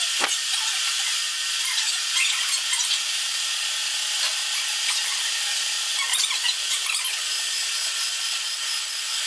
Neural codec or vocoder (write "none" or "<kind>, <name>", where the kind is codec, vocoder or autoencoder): none